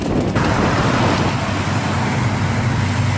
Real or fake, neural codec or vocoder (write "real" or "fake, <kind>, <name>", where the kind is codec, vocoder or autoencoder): real